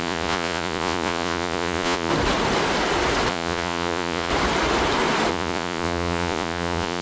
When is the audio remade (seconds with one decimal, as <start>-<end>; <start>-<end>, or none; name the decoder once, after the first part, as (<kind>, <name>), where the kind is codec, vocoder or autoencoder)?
0.0-2.1 (vocoder, Vocos); 3.3-4.3; 5.3-7.0